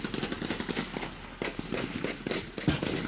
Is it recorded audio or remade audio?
recorded